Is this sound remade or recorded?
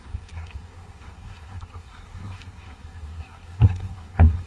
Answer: remade